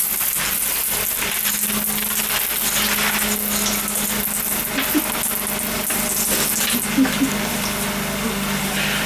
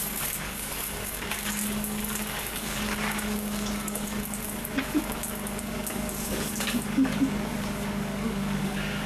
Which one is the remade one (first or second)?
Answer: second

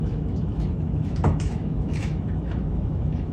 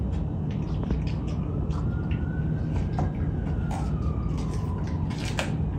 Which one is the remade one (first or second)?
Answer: first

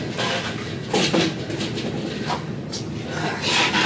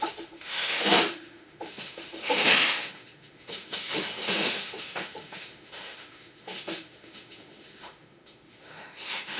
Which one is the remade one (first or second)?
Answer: second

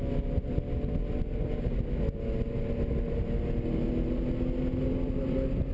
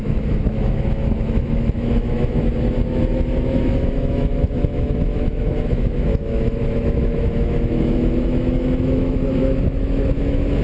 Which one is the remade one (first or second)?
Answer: second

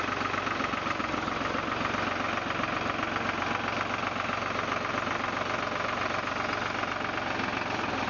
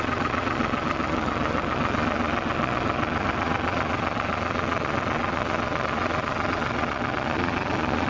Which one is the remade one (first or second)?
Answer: second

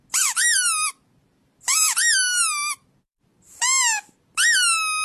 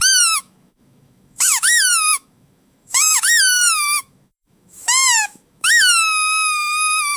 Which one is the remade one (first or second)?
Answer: second